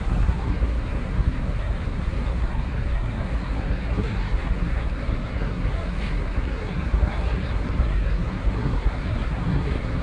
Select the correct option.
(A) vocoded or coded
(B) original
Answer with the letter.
A